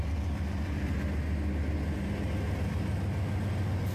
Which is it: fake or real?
real